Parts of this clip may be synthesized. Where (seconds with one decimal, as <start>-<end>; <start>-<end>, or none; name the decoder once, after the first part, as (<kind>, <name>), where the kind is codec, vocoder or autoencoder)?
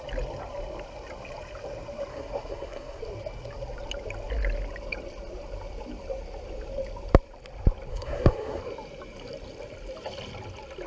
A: 2.1-3.0 (codec, SNAC); 7.9-8.6